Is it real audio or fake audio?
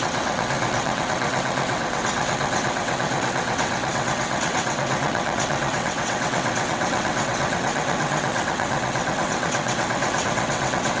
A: fake